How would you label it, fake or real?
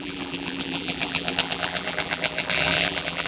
fake